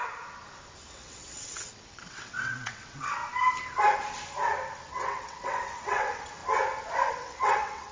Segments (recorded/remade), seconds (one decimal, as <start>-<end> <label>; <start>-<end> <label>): 0.0-0.9 recorded; 0.9-3.2 remade; 3.2-4.9 recorded; 4.9-6.4 remade; 6.4-7.1 recorded; 7.1-7.9 remade